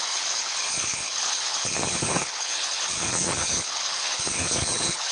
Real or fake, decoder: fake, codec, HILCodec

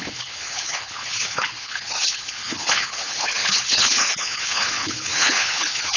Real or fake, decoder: fake, codec, HILCodec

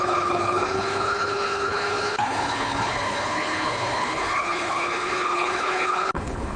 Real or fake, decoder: fake, codec, HILCodec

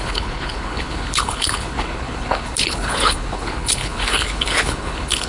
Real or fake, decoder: fake, codec, HILCodec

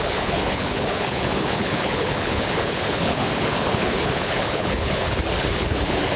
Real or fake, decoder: fake, codec, HILCodec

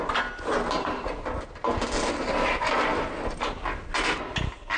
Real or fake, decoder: real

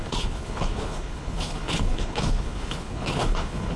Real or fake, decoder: fake, codec, HILCodec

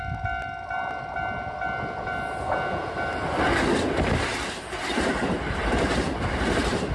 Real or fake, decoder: real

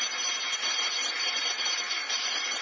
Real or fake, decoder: real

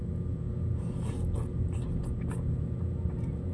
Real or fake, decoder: real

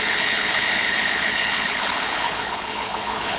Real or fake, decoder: fake, codec, HILCodec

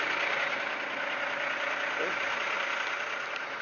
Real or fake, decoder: real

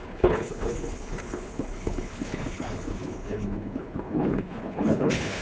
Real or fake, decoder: fake, codec, HILCodec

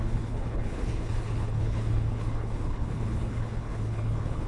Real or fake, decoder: fake, codec, HILCodec